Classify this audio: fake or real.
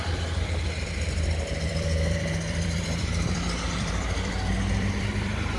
fake